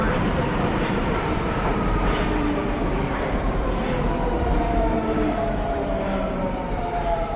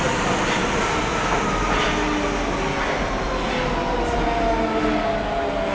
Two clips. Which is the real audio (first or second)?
second